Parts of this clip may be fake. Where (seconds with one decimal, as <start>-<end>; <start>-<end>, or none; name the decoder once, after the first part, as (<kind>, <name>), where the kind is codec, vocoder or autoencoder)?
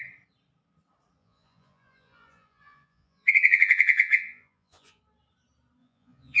1.2-5.0 (vocoder, Vocos); 5.8-6.4